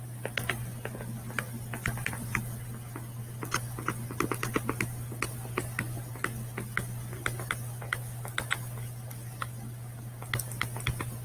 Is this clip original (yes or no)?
yes